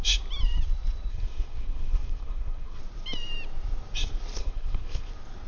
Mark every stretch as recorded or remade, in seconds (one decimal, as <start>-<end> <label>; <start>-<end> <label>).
0.0-1.1 recorded; 1.1-2.8 remade; 2.8-4.4 recorded; 4.4-5.1 remade; 5.1-5.5 recorded